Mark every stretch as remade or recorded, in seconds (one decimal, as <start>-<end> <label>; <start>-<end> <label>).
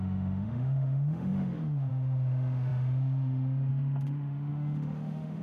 0.0-5.4 remade